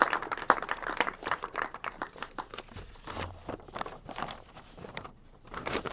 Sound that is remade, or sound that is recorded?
remade